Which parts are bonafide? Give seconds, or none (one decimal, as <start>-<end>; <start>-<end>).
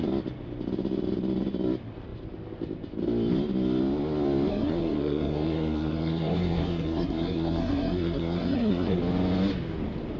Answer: 0.0-4.5; 9.0-10.2